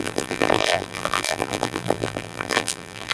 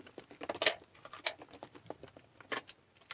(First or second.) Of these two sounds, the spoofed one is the first